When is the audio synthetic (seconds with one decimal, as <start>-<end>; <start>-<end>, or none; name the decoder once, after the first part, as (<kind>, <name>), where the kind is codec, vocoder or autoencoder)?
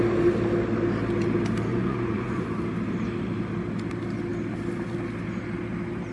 1.7-2.4 (vocoder, Vocos)